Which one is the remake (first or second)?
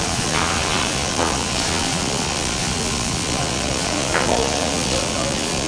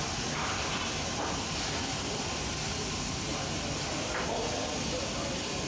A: first